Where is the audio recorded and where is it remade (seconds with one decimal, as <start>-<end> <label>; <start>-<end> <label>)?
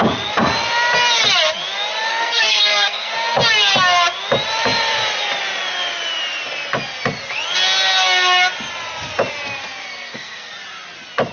0.0-2.1 recorded; 2.1-3.1 remade; 3.1-9.8 recorded; 9.8-10.5 remade; 10.5-11.3 recorded